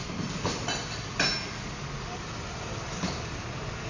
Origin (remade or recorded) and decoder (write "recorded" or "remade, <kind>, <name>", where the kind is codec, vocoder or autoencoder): recorded